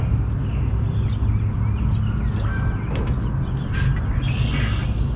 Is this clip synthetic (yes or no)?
no